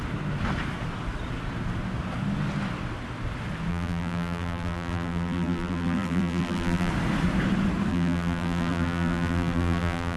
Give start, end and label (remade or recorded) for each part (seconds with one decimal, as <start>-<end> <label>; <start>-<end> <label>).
0.0-3.7 recorded; 3.7-6.9 remade; 6.9-7.9 recorded; 7.9-10.2 remade